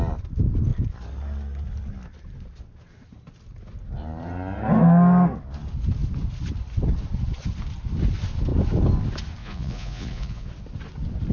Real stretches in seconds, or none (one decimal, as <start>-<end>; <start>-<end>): 0.0-9.4; 10.5-11.3